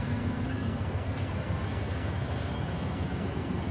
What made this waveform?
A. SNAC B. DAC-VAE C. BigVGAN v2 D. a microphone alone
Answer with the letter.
A